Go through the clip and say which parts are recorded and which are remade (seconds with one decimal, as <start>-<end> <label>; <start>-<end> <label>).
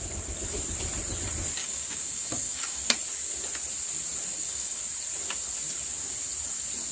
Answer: 0.0-1.6 recorded; 1.6-2.8 remade; 2.8-4.3 recorded; 4.3-4.8 remade; 4.8-6.9 recorded